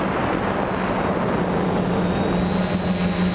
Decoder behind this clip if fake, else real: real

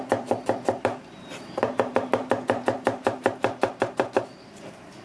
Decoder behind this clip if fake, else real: fake, vocoder, BigVGAN v2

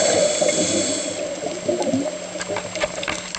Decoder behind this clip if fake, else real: real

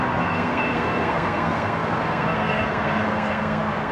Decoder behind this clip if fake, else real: fake, codec, SNAC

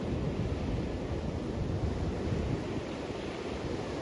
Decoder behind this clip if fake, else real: real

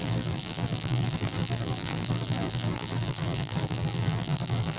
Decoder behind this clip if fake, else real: fake, vocoder, BigVGAN v2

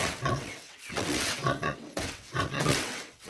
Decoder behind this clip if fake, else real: fake, vocoder, WaveNeXt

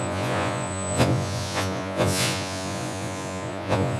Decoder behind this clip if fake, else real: fake, vocoder, Vocos